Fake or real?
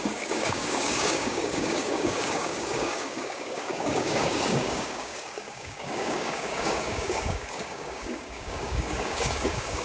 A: fake